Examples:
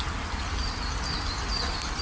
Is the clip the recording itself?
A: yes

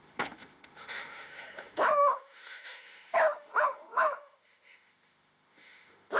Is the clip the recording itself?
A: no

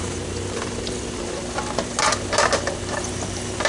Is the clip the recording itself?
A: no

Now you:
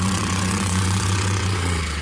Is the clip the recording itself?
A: no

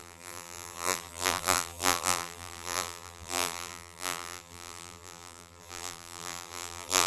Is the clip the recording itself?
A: no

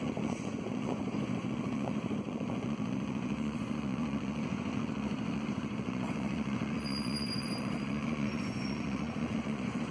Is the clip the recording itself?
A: no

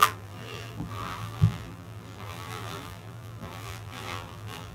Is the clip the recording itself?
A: no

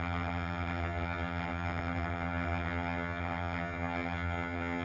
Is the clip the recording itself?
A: no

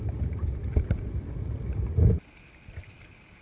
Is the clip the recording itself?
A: yes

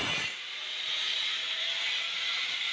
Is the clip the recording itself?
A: no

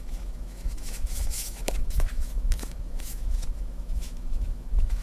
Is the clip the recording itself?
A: no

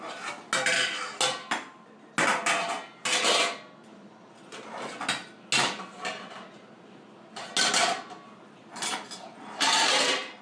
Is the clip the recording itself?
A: yes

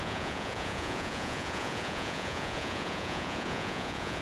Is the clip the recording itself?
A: no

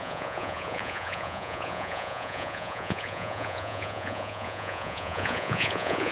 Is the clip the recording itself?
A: no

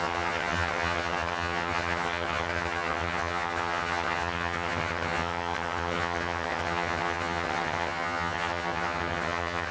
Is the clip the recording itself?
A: no